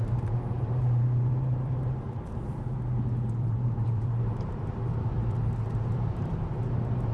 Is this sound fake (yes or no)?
yes